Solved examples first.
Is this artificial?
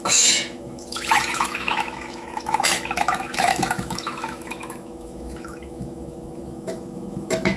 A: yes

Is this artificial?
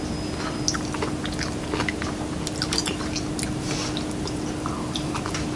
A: no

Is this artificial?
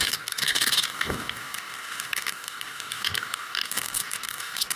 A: yes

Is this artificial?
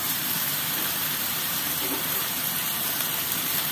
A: yes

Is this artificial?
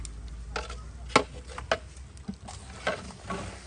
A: no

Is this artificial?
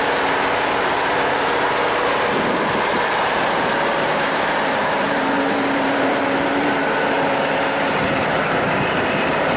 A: yes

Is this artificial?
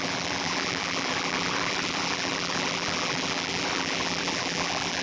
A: yes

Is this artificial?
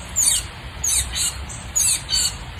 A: yes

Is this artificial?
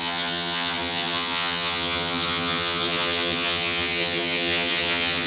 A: yes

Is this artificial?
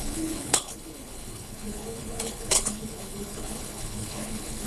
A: yes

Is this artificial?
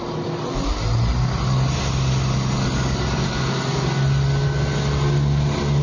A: no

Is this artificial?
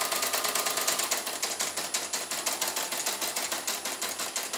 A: no